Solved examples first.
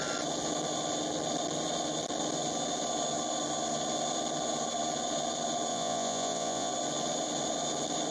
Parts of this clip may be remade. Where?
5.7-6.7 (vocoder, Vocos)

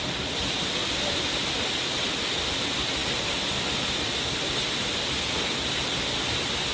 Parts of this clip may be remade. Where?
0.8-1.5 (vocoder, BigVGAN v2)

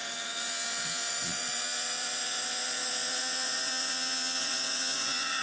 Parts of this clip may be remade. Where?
0.0-5.4 (vocoder, Vocos)

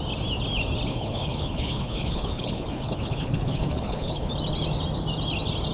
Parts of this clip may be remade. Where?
0.9-4.3 (codec, HILCodec)